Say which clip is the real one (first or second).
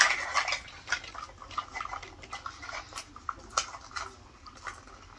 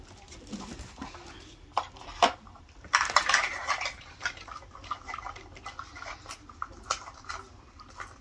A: first